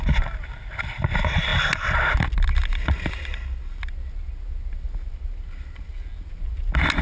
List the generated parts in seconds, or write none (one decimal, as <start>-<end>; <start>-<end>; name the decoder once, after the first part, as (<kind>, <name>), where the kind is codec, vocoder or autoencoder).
none